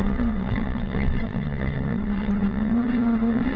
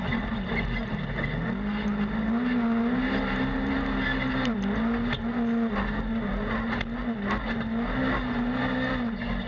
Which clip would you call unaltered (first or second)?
second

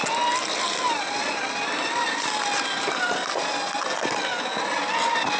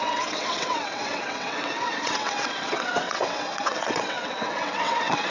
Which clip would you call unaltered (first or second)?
first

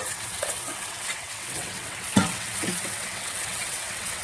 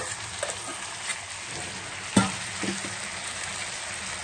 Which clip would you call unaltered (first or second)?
second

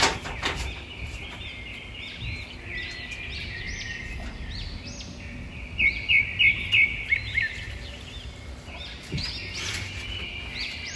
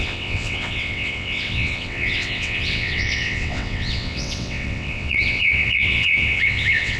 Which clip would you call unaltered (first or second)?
first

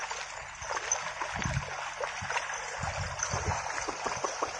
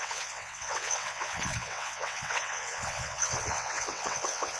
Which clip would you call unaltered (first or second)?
first